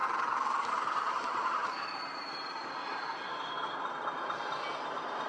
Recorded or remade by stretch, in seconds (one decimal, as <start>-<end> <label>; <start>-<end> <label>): 0.0-3.2 remade; 3.2-5.3 recorded